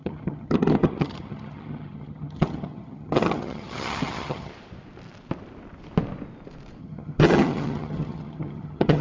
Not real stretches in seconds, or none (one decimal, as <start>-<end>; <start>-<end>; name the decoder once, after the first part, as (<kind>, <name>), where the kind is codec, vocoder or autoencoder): 0.0-4.5 (vocoder, HiFi-GAN); 6.8-9.0